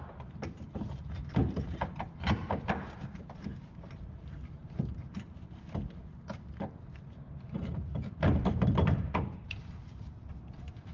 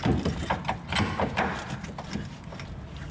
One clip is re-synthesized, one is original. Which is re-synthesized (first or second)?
first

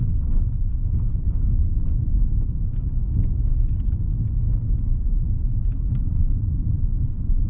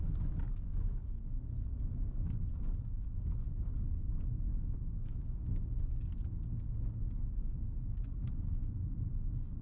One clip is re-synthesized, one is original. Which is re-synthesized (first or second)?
first